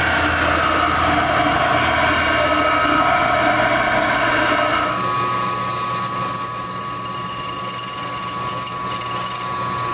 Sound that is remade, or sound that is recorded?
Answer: recorded